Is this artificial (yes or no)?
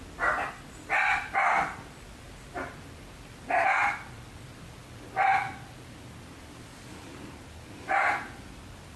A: no